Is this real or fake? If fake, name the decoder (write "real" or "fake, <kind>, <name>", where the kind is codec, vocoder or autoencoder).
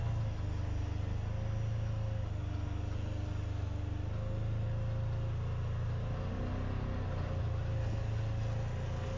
real